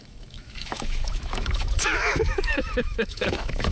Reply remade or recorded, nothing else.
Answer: remade